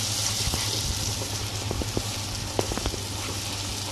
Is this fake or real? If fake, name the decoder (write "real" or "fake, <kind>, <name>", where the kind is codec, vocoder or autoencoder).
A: real